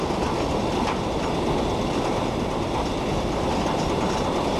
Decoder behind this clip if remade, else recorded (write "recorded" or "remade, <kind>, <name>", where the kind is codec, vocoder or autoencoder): recorded